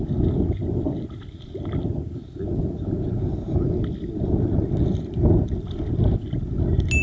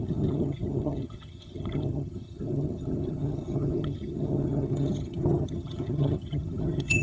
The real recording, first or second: first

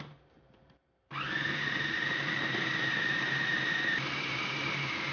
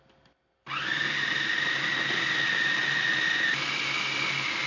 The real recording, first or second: second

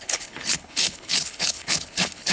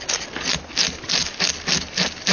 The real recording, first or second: second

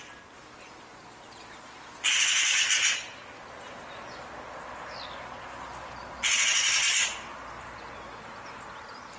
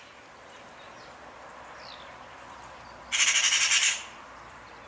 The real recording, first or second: first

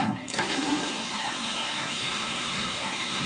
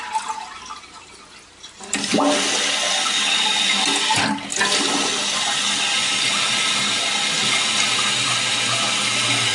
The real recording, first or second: second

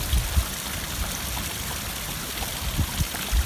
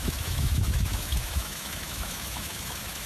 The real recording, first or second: first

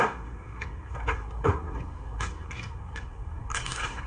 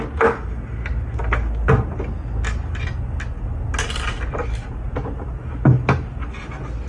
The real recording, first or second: second